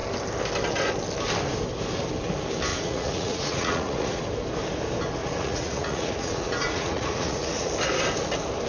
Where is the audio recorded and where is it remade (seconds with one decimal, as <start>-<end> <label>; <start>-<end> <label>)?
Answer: 0.0-2.7 recorded; 2.7-4.2 remade; 4.2-5.2 recorded; 5.2-7.7 remade; 7.7-8.7 recorded